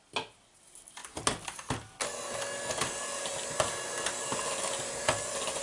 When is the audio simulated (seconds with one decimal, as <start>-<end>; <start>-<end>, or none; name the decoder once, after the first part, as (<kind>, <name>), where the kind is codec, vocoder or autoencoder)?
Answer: none